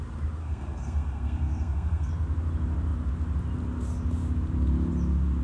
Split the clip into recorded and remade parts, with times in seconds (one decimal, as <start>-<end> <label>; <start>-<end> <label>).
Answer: 0.0-0.4 recorded; 0.4-2.1 remade; 2.1-5.4 recorded